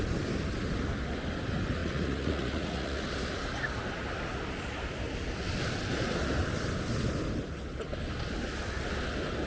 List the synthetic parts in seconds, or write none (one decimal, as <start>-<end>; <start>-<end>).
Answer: 1.8-3.1